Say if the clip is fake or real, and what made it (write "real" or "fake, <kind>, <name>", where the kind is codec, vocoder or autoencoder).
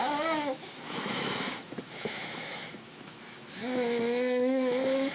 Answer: fake, autoencoder, DAC-VAE